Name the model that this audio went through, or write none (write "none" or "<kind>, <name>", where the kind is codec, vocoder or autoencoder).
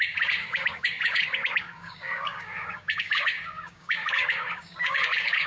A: codec, DAC